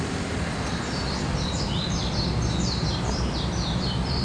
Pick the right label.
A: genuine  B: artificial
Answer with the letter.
A